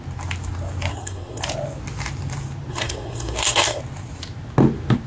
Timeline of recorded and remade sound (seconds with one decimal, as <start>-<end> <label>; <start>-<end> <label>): 0.0-0.9 recorded; 0.9-1.4 remade; 1.4-2.7 recorded; 2.7-3.8 remade; 3.8-5.1 recorded